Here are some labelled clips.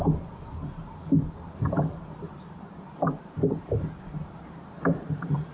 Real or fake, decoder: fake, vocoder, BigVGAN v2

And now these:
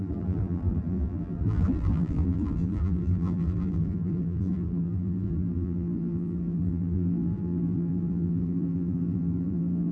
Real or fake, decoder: fake, vocoder, BigVGAN v2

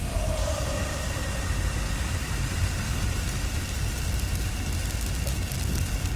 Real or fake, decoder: fake, vocoder, BigVGAN v2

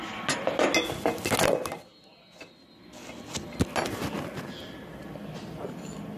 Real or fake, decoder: real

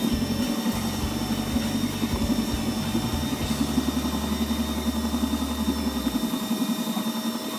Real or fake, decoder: real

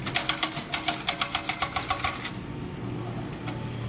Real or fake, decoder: real